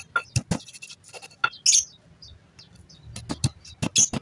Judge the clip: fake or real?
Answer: real